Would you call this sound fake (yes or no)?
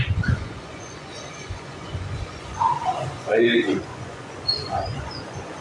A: yes